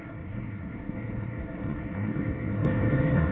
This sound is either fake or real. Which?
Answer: fake